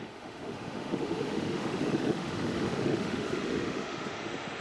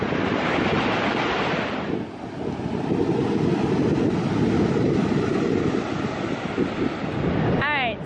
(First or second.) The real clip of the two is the second